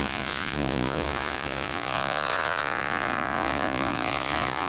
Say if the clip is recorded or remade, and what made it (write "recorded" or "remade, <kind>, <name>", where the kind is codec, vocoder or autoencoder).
remade, vocoder, Vocos